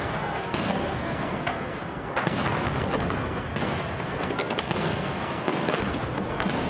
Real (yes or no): no